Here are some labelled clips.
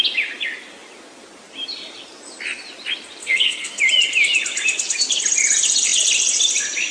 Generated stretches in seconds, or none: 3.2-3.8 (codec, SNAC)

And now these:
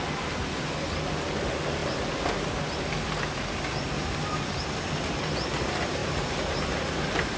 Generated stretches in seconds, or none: 6.0-7.4 (vocoder, BigVGAN v2)

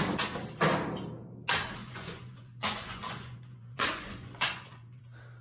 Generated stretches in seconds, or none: 1.8-5.0 (vocoder, Vocos)

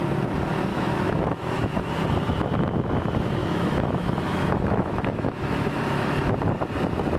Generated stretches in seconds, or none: 0.7-1.9 (autoencoder, DAC-VAE); 3.4-5.8

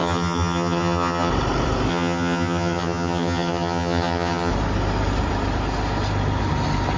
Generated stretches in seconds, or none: 0.0-1.3 (vocoder, HiFi-GAN); 1.9-4.5

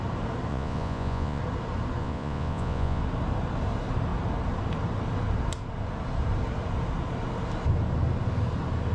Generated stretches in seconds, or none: 0.5-1.4 (vocoder, Vocos); 2.0-3.0